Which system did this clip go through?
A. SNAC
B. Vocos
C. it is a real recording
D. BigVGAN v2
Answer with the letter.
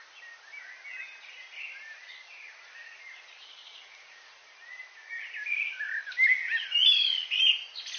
C